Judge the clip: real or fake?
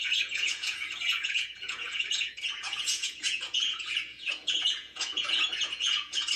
fake